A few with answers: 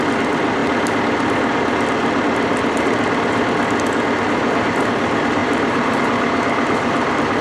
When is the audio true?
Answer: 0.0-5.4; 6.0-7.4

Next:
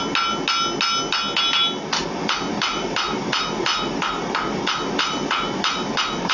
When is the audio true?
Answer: 0.0-2.5

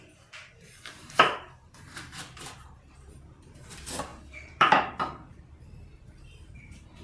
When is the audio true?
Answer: none

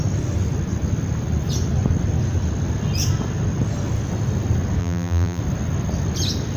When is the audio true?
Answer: 0.0-4.8; 5.4-6.6

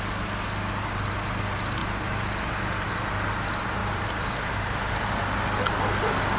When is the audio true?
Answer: 0.0-1.8; 2.9-3.8; 4.8-6.4

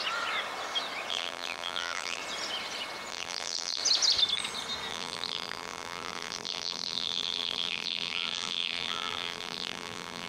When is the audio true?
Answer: 0.0-1.1; 2.2-3.1; 3.8-4.9

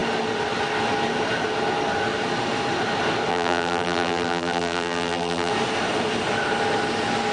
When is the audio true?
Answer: 0.0-3.3; 5.5-7.3